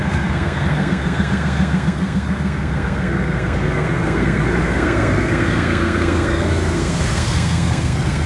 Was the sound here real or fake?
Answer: fake